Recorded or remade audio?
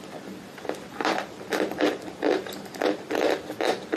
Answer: remade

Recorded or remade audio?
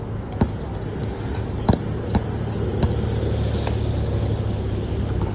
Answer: recorded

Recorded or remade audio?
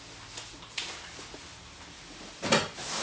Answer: recorded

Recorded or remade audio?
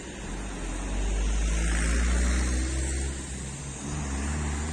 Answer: recorded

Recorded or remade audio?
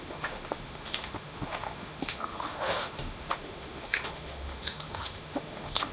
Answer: remade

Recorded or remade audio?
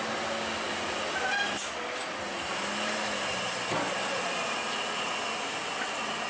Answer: recorded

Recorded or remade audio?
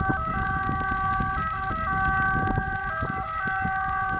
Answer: recorded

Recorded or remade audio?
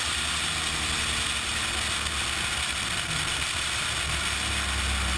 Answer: recorded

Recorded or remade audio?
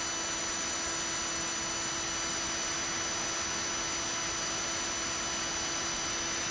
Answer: recorded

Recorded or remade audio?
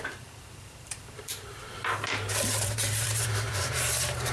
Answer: remade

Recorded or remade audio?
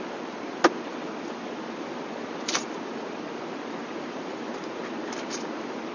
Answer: recorded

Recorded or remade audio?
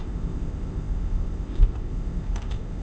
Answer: remade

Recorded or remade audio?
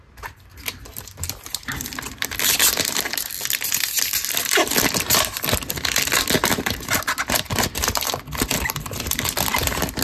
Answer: remade